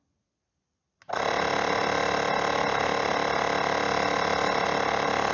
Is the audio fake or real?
real